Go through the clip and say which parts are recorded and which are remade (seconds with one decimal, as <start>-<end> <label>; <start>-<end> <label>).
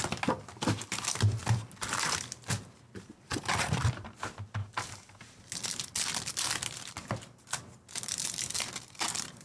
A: 0.0-4.6 recorded; 4.6-5.2 remade; 5.2-9.4 recorded